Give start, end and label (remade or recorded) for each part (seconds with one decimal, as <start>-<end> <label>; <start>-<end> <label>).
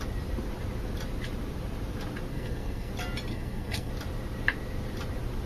0.0-2.3 recorded; 2.3-2.9 remade; 2.9-3.3 recorded; 3.3-3.9 remade; 3.9-5.5 recorded